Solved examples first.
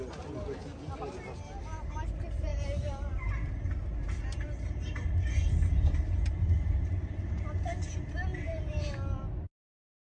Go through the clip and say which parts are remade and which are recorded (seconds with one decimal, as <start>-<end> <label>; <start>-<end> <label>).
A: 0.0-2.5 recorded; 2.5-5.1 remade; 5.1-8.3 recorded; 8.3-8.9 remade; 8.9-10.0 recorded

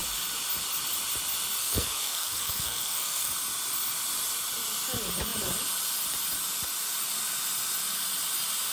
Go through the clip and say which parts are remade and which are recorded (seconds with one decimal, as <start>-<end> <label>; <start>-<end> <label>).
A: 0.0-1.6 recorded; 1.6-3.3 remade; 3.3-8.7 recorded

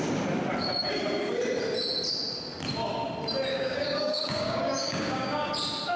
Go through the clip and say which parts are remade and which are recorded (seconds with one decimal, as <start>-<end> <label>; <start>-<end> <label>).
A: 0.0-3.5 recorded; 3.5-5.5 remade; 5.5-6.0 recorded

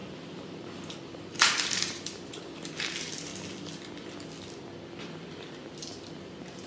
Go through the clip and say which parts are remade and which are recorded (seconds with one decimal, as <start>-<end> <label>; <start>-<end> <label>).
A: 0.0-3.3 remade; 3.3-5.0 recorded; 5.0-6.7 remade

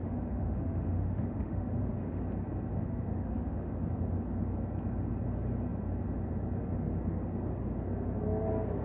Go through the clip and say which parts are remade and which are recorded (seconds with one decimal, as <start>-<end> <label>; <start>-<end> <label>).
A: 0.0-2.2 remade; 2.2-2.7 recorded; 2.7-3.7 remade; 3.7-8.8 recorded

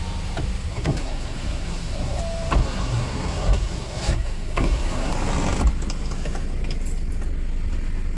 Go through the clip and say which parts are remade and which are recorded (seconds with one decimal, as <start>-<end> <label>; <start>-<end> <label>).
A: 0.0-0.7 recorded; 0.7-2.2 remade; 2.2-2.6 recorded; 2.6-5.1 remade; 5.1-8.2 recorded

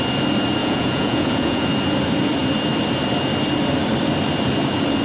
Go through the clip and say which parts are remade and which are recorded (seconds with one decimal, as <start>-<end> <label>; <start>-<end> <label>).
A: 0.0-0.6 recorded; 0.6-1.7 remade; 1.7-5.0 recorded